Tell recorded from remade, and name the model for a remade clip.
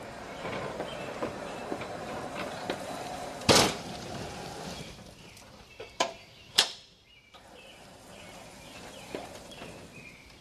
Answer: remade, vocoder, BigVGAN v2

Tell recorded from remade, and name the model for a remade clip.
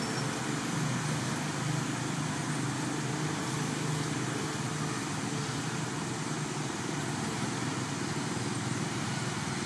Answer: recorded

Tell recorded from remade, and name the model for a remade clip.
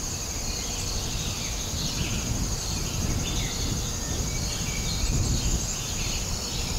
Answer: recorded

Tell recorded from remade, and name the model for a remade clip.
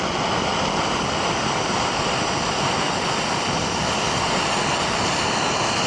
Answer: recorded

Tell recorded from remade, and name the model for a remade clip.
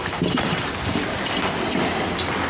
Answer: recorded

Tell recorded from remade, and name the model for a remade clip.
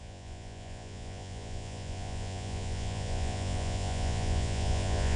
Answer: remade, vocoder, Vocos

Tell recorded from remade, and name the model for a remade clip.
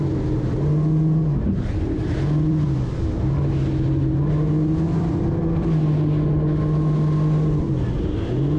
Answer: recorded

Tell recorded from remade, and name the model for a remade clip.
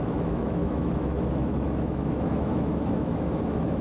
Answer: remade, autoencoder, DAC-VAE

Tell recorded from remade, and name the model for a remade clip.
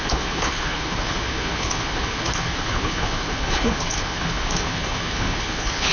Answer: remade, codec, HILCodec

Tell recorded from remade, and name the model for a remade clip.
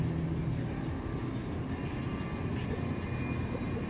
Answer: recorded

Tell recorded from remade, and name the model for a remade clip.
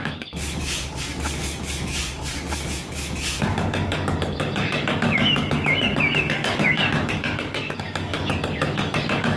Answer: remade, codec, DAC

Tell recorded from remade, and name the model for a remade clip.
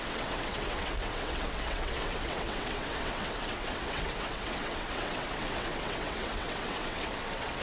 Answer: remade, vocoder, WaveNeXt